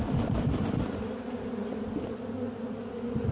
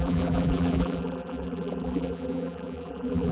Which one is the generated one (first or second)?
second